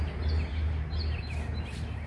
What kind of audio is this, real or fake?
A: real